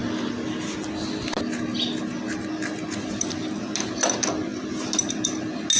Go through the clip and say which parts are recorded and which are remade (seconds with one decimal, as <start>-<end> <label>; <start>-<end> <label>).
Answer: 0.0-5.8 recorded